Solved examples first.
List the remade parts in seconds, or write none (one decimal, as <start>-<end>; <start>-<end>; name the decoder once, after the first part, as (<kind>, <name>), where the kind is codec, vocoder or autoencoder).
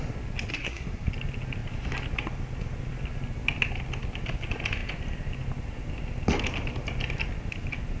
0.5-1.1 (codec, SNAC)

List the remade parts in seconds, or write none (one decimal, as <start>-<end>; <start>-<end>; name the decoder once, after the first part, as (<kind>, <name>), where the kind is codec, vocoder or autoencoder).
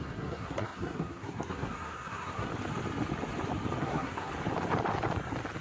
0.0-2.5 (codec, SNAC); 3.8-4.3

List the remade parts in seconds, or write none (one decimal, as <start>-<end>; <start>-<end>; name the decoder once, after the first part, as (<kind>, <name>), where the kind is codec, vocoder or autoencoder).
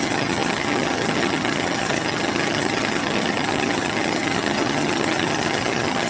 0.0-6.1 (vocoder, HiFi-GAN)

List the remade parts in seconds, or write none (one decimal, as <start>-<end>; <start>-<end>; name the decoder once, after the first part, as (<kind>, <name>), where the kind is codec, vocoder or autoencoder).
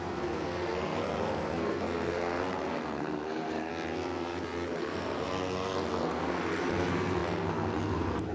0.0-3.7 (codec, SNAC); 4.8-8.3